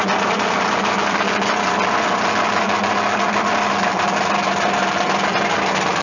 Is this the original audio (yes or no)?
yes